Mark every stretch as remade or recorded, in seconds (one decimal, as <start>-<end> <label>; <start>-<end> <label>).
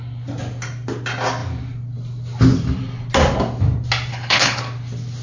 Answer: 0.0-4.1 recorded; 4.1-4.6 remade; 4.6-5.2 recorded